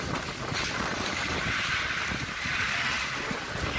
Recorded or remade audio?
recorded